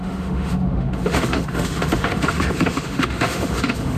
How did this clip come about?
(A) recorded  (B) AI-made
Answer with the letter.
B